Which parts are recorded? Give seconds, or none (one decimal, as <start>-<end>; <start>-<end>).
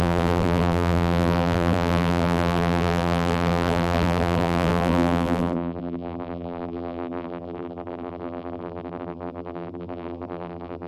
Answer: none